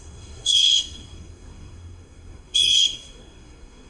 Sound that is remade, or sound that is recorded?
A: remade